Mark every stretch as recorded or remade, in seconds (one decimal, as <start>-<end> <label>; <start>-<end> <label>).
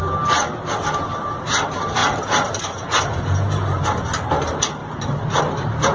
0.0-5.9 recorded